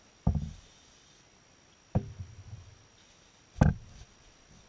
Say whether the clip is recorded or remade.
recorded